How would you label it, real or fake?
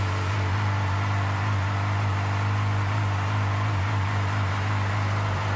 real